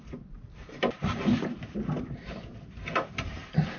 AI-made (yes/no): no